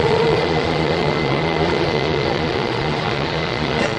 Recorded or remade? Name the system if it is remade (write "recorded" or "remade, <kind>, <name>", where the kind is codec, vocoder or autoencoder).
remade, vocoder, Vocos